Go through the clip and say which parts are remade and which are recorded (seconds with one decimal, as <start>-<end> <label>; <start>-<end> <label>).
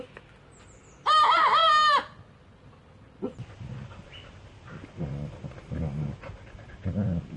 0.0-7.4 recorded